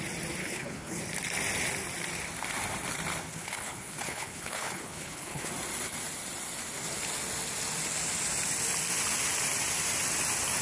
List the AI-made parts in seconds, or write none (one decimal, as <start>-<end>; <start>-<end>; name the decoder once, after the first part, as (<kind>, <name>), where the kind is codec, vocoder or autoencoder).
0.4-1.0 (codec, HILCodec); 3.3-5.5